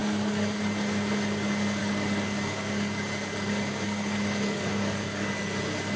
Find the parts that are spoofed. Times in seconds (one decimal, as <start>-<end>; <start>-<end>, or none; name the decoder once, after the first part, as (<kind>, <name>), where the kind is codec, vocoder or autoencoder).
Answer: 0.0-0.6 (codec, DAC); 1.8-5.4